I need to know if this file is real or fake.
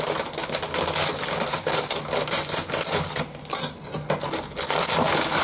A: real